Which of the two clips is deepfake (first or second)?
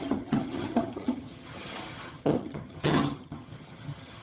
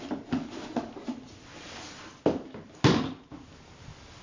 first